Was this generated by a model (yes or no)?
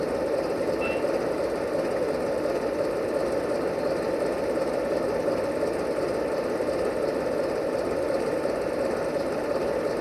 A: no